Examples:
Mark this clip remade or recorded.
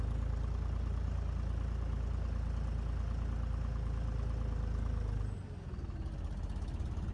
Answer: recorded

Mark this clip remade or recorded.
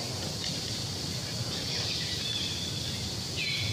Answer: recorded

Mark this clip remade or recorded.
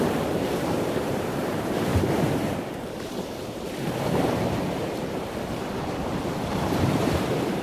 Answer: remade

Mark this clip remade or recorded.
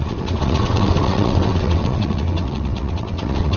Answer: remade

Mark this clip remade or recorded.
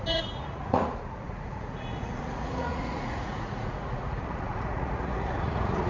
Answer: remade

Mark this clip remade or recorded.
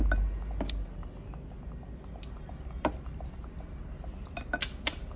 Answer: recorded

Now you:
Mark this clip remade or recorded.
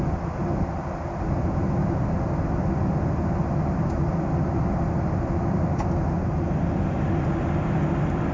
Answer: recorded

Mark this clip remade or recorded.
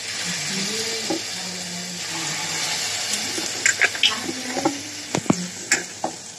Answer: recorded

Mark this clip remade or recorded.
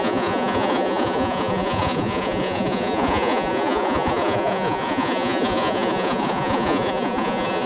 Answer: remade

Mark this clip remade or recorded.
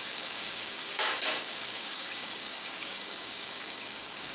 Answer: remade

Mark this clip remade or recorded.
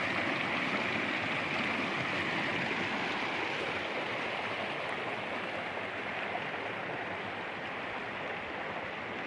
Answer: recorded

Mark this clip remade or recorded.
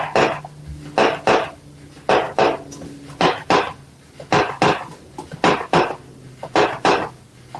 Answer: recorded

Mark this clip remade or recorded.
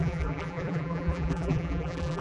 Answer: remade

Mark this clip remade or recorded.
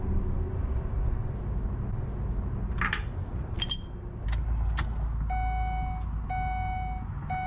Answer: recorded